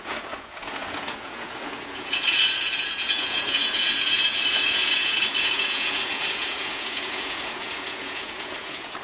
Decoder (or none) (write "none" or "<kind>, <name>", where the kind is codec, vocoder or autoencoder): vocoder, Vocos